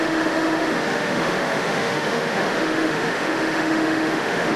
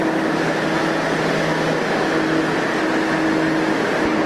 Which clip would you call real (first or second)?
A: second